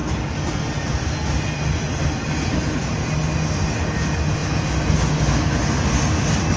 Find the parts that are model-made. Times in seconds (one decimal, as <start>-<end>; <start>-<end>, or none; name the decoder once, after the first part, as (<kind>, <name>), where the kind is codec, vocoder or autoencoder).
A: 0.0-1.4 (vocoder, BigVGAN v2)